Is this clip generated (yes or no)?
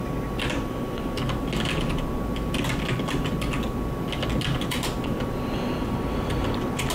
no